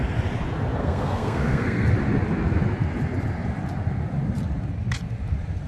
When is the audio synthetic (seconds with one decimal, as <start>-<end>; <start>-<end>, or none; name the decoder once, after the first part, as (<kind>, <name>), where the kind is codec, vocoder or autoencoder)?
0.8-1.9 (codec, SNAC)